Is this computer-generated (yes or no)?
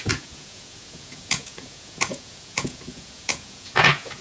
yes